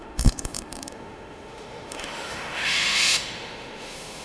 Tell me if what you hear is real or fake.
fake